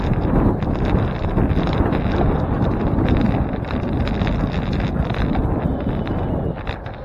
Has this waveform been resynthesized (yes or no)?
no